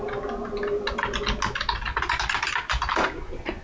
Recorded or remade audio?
recorded